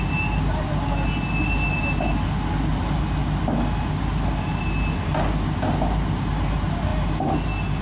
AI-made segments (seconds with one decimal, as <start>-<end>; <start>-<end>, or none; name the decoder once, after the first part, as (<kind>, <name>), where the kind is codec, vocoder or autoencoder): none